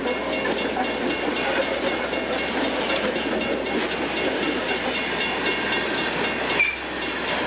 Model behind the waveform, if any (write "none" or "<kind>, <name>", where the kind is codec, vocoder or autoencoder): none